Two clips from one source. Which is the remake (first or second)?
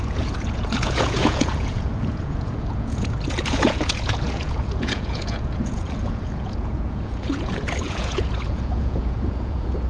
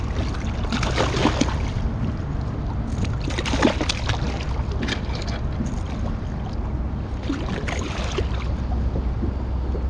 first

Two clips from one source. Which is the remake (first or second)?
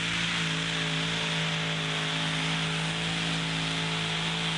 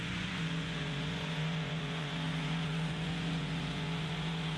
second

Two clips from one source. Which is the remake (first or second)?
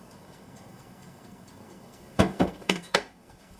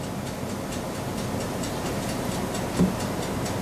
first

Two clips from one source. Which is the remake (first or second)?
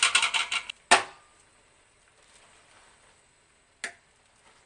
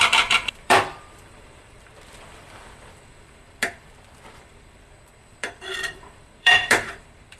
second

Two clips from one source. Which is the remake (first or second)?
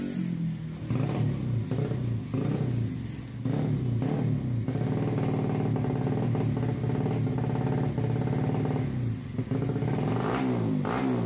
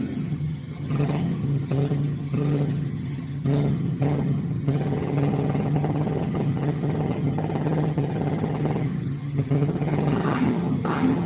second